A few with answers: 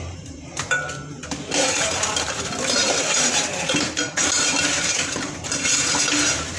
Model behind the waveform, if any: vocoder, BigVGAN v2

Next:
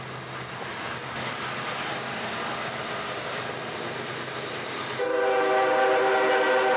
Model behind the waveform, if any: none